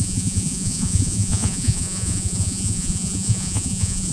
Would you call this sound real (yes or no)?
no